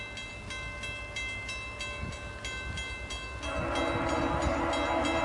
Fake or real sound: real